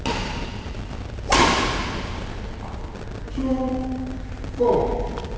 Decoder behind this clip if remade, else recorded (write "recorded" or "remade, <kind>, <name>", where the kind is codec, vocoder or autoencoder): recorded